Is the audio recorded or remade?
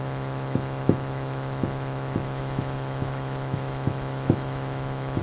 remade